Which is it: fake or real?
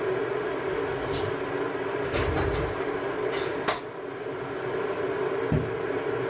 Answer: real